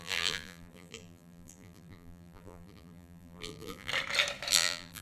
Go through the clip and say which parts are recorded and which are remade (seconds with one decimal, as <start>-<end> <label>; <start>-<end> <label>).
0.0-3.9 remade; 3.9-4.5 recorded; 4.5-5.0 remade